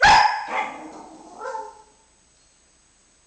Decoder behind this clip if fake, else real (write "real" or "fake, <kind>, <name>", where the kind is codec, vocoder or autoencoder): real